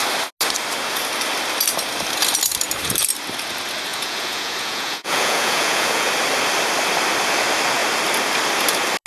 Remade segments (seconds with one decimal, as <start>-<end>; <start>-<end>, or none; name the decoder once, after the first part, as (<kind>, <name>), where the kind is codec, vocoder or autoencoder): 3.9-6.1 (vocoder, Vocos)